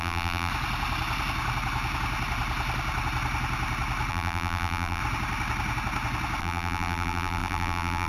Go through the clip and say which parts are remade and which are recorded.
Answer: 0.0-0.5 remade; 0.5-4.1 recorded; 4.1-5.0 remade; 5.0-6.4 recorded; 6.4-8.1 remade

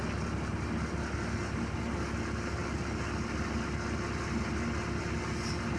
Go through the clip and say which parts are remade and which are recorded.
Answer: 0.0-5.8 recorded

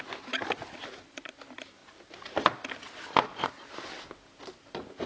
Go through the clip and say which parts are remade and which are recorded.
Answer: 0.0-5.1 recorded

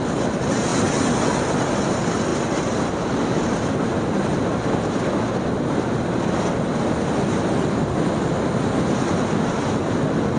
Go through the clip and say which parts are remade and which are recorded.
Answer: 0.0-10.4 recorded

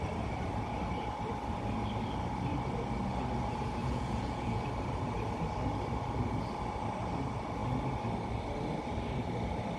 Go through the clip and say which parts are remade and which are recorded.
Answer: 0.0-3.8 recorded; 3.8-4.6 remade; 4.6-9.8 recorded

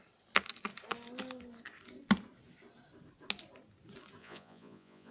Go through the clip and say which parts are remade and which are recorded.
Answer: 0.0-4.2 recorded; 4.2-5.1 remade